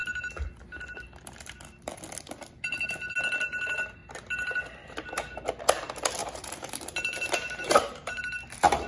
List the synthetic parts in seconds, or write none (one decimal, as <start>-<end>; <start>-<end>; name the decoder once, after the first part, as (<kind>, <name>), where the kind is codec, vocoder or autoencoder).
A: 6.2-8.2 (vocoder, BigVGAN v2)